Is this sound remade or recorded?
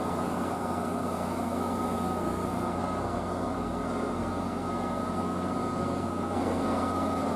remade